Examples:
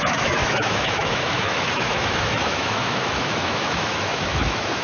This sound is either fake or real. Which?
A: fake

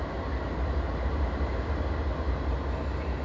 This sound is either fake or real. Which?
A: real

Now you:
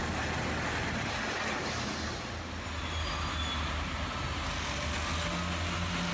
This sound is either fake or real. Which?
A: real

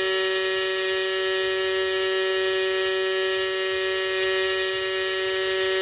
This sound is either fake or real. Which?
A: real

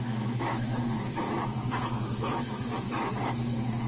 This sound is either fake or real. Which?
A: fake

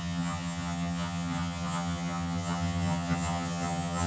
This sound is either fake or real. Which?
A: fake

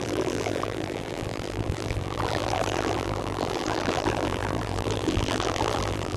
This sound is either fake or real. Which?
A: fake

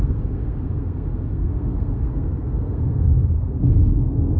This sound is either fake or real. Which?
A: fake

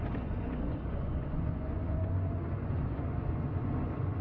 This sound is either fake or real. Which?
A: fake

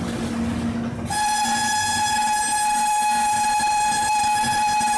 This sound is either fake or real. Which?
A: real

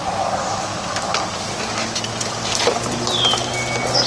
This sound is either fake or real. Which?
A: real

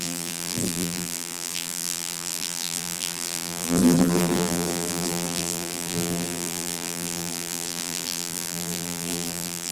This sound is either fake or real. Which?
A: fake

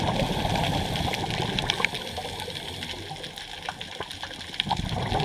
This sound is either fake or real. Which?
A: real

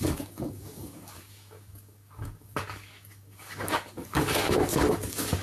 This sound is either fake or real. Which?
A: fake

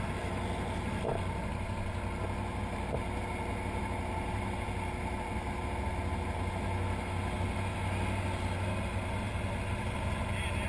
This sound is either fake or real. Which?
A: real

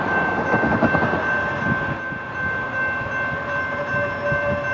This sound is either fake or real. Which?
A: real